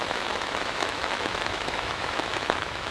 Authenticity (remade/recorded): remade